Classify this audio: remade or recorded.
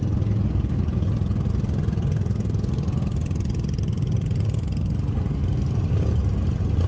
recorded